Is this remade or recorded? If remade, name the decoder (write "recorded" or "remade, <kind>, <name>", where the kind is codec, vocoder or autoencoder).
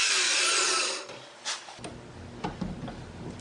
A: recorded